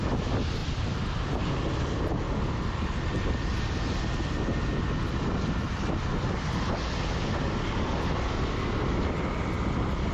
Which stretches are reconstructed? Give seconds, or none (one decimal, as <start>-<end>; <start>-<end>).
none